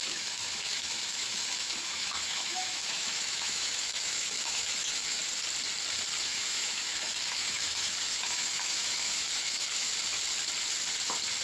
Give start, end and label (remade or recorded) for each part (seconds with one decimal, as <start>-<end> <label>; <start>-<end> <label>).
0.0-5.2 remade; 5.2-6.2 recorded; 6.2-9.9 remade; 9.9-11.4 recorded